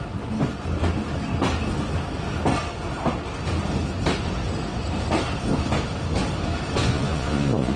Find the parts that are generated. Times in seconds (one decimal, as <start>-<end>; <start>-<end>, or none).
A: 6.8-7.8